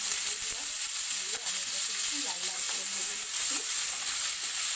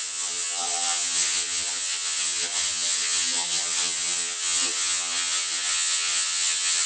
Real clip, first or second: first